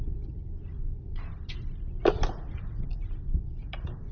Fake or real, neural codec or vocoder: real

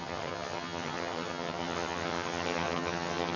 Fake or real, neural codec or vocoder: fake, vocoder, HiFi-GAN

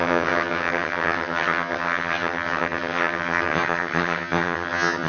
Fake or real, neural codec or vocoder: fake, vocoder, HiFi-GAN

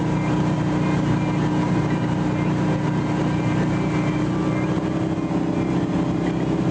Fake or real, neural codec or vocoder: real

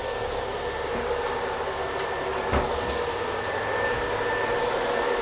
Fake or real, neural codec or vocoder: real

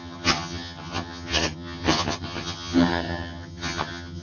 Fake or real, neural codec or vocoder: fake, vocoder, HiFi-GAN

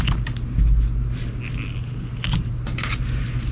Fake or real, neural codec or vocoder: real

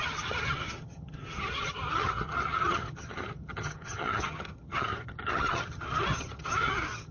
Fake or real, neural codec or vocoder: fake, vocoder, HiFi-GAN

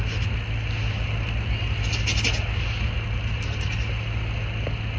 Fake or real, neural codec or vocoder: real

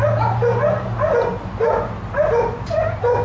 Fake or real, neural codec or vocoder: real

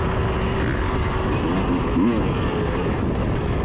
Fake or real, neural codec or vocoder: real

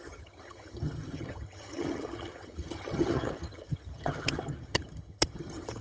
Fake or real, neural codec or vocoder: fake, vocoder, HiFi-GAN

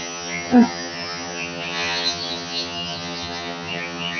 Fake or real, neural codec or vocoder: fake, vocoder, HiFi-GAN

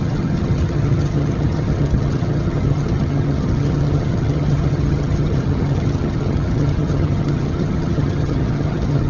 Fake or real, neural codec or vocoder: fake, vocoder, HiFi-GAN